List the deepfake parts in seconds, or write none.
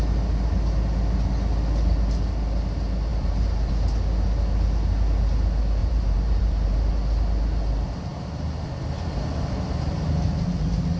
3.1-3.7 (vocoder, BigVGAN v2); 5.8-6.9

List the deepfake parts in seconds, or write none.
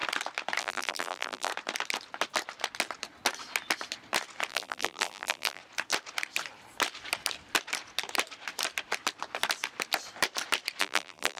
0.6-1.5 (vocoder, BigVGAN v2); 4.5-5.6; 10.8-11.4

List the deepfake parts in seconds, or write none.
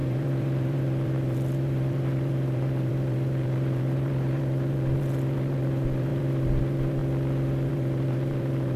0.0-7.0 (vocoder, BigVGAN v2); 7.7-8.8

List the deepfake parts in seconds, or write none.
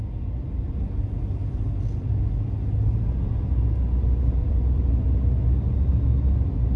1.4-2.2 (vocoder, BigVGAN v2); 4.4-5.0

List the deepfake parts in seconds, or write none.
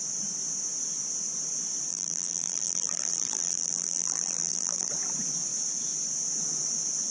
1.9-4.9 (vocoder, BigVGAN v2)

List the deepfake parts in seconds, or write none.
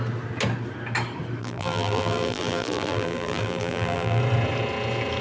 1.4-4.2 (vocoder, BigVGAN v2)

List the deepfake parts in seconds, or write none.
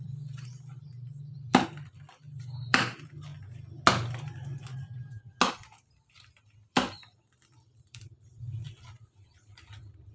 0.0-3.3 (vocoder, BigVGAN v2); 5.5-10.1